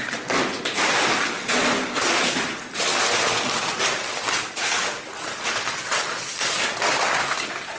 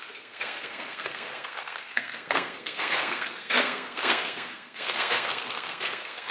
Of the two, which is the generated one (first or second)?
second